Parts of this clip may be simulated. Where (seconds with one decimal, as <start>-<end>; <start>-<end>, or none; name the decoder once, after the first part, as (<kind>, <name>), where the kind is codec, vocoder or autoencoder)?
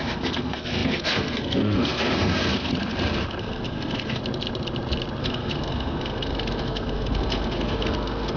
0.0-2.7 (codec, SNAC); 3.4-4.2; 5.2-8.4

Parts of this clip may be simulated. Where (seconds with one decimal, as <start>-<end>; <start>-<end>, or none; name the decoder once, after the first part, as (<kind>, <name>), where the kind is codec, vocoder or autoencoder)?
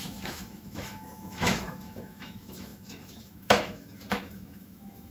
0.0-5.1 (autoencoder, DAC-VAE)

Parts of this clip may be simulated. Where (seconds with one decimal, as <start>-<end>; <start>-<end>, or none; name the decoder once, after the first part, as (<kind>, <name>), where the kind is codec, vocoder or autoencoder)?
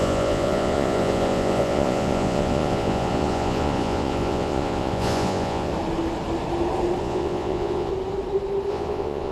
0.0-5.7 (vocoder, Vocos); 7.0-7.9; 8.7-9.3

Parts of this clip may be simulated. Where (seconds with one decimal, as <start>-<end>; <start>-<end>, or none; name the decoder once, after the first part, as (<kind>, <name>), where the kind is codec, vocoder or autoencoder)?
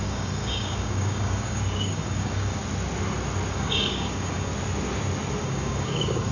0.0-2.6 (codec, DAC); 3.5-4.5; 5.4-6.3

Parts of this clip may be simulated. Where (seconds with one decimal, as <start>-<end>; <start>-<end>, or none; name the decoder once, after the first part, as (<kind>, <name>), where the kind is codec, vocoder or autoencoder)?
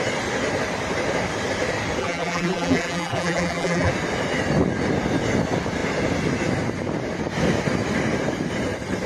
2.0-3.9 (vocoder, BigVGAN v2)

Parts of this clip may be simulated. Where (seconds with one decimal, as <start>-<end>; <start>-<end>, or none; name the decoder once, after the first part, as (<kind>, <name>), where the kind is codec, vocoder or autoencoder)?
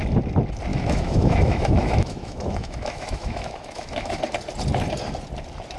0.7-4.2 (autoencoder, DAC-VAE)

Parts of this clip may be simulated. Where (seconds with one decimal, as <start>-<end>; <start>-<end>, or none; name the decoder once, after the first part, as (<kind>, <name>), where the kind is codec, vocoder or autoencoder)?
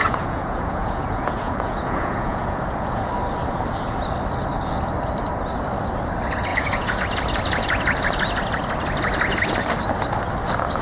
0.0-3.1 (vocoder, Vocos); 6.5-7.0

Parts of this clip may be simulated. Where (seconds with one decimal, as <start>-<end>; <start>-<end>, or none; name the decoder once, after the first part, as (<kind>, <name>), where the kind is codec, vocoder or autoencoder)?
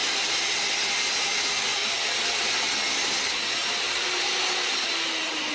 none